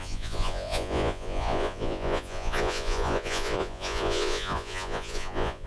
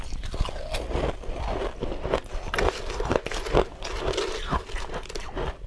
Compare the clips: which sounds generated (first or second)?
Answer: first